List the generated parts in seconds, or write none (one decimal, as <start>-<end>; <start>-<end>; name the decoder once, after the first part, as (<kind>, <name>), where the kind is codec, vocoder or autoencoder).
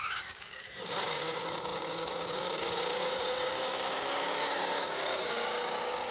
0.0-6.1 (codec, DAC)